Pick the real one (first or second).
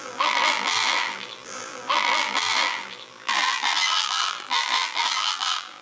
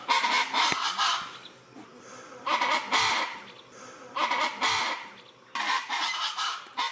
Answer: second